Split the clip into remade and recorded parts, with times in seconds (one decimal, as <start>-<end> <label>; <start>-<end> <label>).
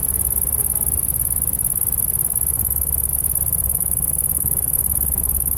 0.0-2.5 recorded; 2.5-3.1 remade; 3.1-3.5 recorded; 3.5-5.6 remade